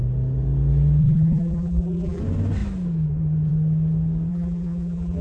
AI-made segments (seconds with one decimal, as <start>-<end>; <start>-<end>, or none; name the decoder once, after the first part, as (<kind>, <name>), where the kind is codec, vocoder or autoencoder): 1.0-2.2 (vocoder, BigVGAN v2); 4.3-5.2